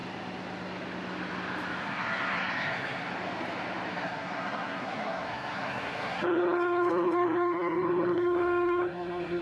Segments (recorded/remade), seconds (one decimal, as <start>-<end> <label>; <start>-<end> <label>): 0.0-1.8 recorded; 1.8-3.1 remade; 3.1-3.9 recorded; 3.9-9.4 remade